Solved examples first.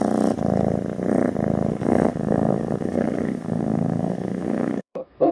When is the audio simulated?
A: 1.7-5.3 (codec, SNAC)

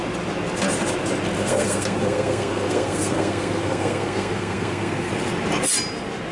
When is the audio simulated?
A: 1.4-5.1 (codec, SNAC)

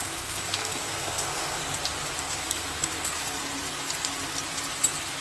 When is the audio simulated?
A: 0.0-1.6 (codec, SNAC); 2.2-3.4

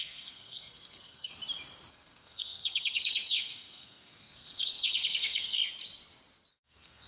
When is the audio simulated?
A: 0.0-1.3 (codec, SNAC); 1.9-5.6; 6.5-7.1

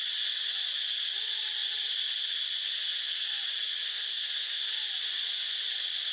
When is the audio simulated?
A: 3.9-4.6 (codec, SNAC)